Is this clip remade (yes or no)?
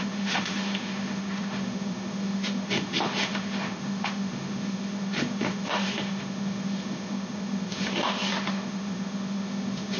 yes